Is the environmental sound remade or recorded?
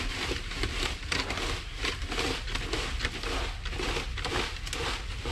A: recorded